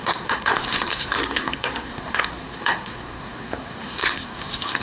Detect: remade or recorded remade